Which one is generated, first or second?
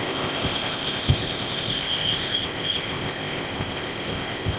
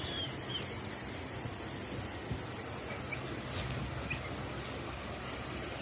first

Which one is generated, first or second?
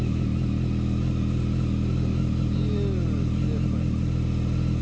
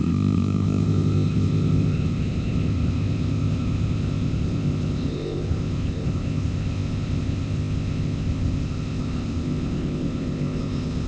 second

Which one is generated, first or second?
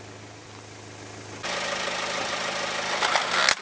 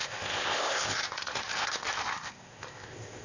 second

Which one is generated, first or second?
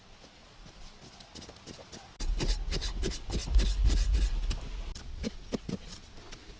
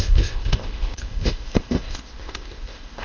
second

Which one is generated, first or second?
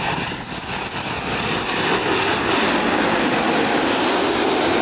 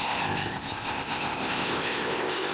second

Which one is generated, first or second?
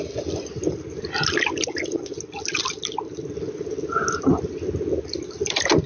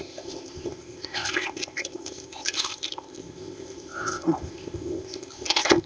second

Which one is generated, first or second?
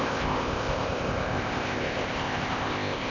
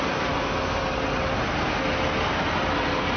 first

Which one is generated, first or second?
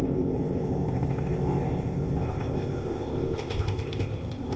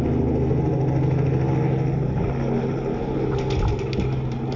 first